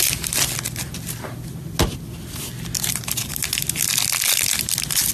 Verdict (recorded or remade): recorded